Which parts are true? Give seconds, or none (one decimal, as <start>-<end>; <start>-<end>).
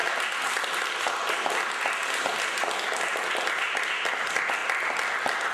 0.0-5.5